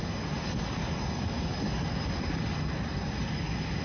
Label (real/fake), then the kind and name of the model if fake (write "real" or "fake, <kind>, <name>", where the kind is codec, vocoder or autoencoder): real